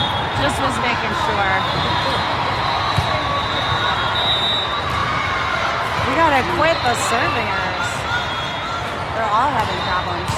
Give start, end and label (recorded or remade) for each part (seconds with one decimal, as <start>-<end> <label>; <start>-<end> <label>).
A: 0.0-0.4 recorded; 0.4-1.1 remade; 1.1-10.4 recorded